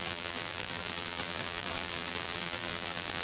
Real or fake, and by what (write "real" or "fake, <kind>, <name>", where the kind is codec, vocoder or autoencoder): fake, vocoder, BigVGAN v2